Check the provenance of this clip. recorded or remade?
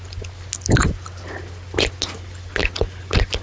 recorded